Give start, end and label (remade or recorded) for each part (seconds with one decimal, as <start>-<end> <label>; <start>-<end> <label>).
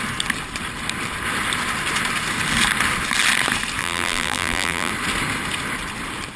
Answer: 0.0-3.8 recorded; 3.8-4.9 remade; 4.9-6.4 recorded